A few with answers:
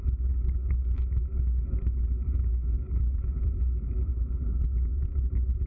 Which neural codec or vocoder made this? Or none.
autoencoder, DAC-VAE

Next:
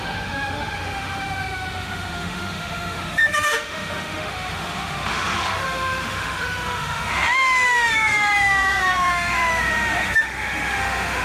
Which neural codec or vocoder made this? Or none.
autoencoder, DAC-VAE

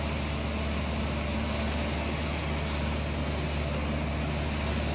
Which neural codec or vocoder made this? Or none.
none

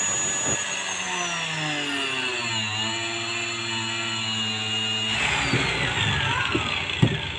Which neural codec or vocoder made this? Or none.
none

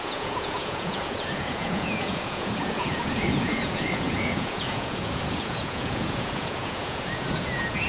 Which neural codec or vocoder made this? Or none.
vocoder, Vocos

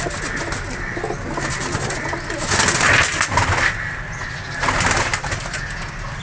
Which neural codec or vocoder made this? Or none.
none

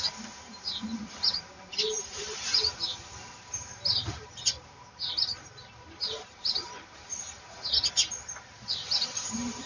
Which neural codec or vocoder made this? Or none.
vocoder, BigVGAN v2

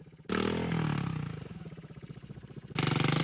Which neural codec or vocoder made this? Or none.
none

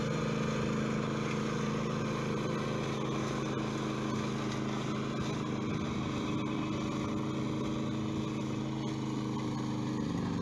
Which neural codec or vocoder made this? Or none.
none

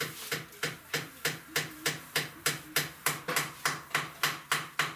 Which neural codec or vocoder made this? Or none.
none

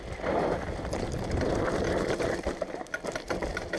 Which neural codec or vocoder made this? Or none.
none